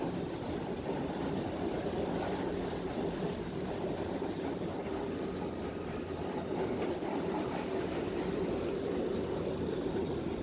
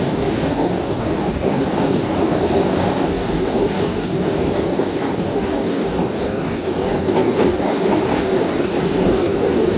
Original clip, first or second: first